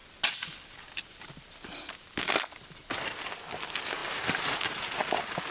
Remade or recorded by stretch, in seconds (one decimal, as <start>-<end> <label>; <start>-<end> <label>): 0.0-5.5 recorded